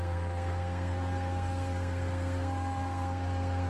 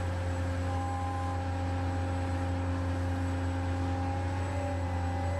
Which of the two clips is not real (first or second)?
first